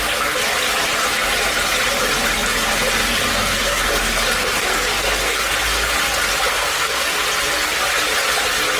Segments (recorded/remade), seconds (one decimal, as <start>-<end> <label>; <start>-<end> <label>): 0.0-3.3 recorded; 3.3-3.9 remade; 3.9-4.4 recorded; 4.4-5.5 remade; 5.5-6.5 recorded; 6.5-7.2 remade; 7.2-8.8 recorded